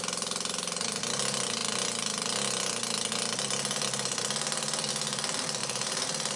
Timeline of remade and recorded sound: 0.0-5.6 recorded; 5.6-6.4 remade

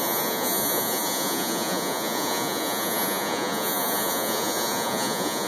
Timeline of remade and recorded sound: 0.0-5.5 remade